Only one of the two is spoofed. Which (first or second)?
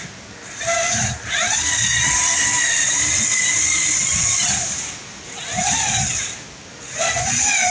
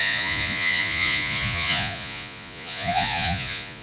second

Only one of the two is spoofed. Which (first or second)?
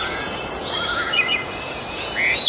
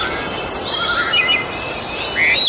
first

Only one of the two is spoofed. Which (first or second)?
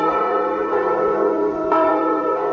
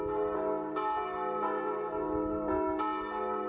first